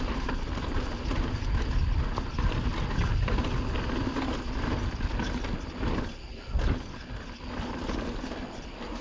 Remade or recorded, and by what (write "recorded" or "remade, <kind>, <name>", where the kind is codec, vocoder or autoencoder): recorded